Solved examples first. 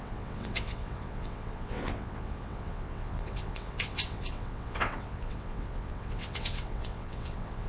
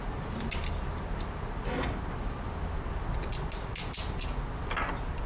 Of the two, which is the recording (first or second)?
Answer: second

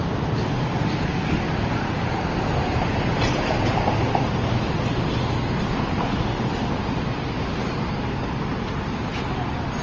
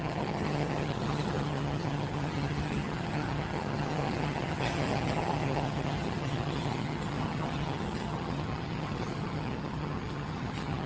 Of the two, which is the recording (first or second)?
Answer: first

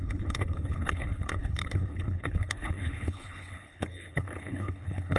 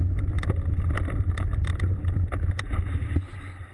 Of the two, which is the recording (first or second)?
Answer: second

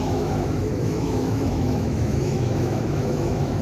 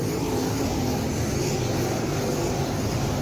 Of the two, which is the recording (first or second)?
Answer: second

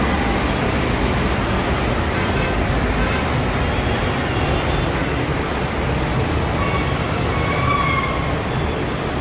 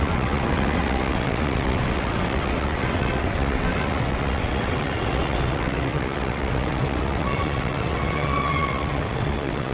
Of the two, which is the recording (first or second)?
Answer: first